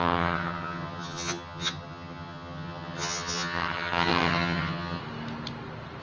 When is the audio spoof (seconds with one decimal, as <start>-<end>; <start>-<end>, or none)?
0.0-5.0